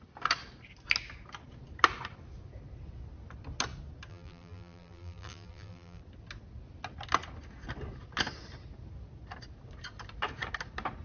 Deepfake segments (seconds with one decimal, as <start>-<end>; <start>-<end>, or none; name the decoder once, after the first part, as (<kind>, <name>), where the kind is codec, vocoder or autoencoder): 4.1-6.0 (vocoder, BigVGAN v2)